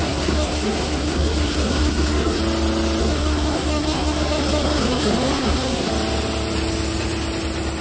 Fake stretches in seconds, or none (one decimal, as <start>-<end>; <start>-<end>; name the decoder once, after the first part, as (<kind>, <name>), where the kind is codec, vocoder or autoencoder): 0.0-2.4 (codec, SNAC); 3.0-5.9